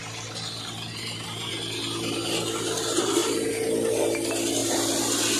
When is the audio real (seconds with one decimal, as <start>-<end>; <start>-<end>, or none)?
0.0-5.4